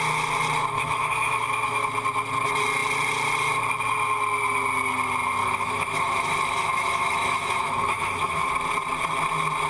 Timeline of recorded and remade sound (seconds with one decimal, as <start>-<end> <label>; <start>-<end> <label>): 0.0-0.6 recorded; 0.6-1.9 remade; 1.9-5.4 recorded; 5.4-8.5 remade; 8.5-9.7 recorded